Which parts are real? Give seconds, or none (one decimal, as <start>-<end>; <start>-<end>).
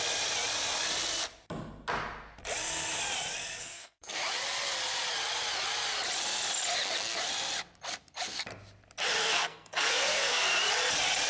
0.0-3.6; 4.2-9.2; 10.5-11.3